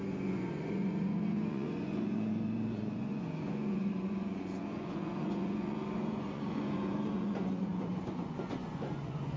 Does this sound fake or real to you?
fake